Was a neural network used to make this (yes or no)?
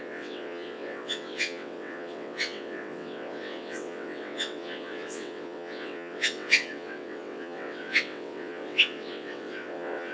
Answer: yes